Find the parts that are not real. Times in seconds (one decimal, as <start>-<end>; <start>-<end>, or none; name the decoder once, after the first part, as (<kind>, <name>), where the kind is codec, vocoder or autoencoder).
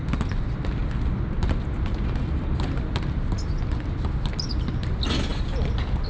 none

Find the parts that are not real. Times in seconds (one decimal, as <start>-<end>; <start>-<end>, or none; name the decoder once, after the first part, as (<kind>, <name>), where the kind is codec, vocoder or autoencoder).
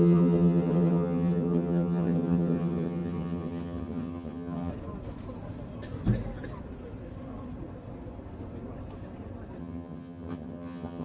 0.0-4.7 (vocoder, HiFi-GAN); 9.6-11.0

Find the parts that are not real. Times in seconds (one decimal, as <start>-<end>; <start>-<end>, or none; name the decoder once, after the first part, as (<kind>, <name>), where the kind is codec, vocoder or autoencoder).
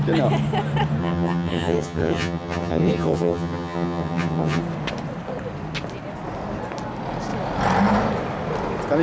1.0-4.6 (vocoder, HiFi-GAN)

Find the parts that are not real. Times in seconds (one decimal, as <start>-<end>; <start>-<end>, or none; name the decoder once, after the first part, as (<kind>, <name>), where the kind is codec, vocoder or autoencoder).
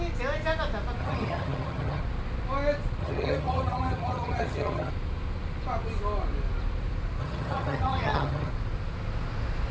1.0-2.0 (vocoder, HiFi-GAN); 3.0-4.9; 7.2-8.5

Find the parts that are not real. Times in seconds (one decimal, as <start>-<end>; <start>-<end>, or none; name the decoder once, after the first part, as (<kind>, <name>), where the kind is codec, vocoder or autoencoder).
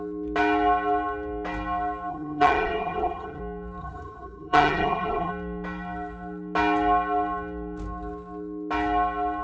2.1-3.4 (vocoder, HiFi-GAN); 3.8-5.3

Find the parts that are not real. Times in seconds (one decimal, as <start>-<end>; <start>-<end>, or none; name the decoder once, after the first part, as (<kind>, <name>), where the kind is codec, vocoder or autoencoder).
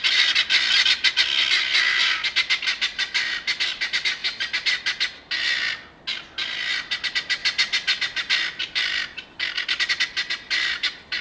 none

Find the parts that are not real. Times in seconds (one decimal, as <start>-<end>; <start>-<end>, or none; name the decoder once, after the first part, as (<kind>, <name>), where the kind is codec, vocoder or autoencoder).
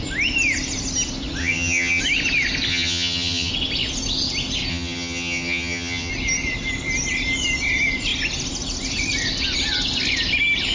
1.4-2.0 (vocoder, HiFi-GAN); 2.7-3.5; 4.7-6.1